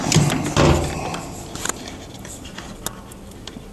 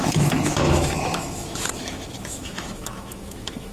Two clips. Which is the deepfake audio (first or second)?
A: second